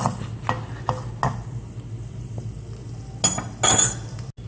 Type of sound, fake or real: real